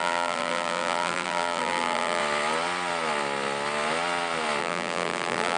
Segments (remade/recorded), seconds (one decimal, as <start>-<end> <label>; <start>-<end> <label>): 0.0-2.2 remade; 2.2-4.6 recorded; 4.6-5.6 remade